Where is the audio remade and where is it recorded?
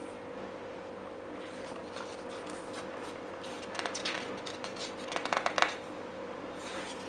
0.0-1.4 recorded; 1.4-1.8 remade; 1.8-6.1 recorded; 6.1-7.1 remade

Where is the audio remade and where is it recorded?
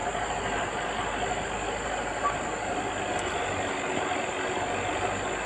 0.0-5.5 recorded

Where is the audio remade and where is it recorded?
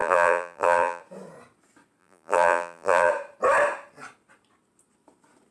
0.0-1.0 remade; 1.0-2.0 recorded; 2.0-3.1 remade; 3.1-5.5 recorded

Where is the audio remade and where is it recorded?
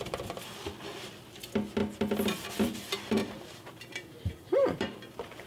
0.0-3.2 recorded; 3.2-5.1 remade; 5.1-5.5 recorded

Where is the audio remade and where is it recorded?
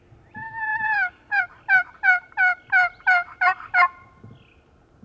0.0-2.4 remade; 2.4-3.0 recorded; 3.0-5.0 remade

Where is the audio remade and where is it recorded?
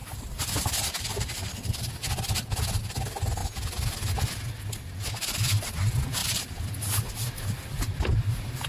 0.0-1.9 remade; 1.9-6.2 recorded; 6.2-6.7 remade; 6.7-8.7 recorded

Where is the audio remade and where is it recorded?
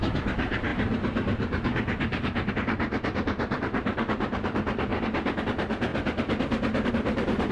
0.0-4.9 remade; 4.9-5.4 recorded; 5.4-5.9 remade; 5.9-6.9 recorded; 6.9-7.5 remade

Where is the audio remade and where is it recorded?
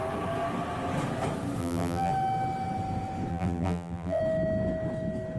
0.0-1.6 recorded; 1.6-2.1 remade; 2.1-3.3 recorded; 3.3-4.2 remade; 4.2-5.4 recorded